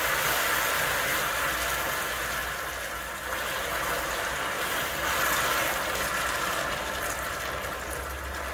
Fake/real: real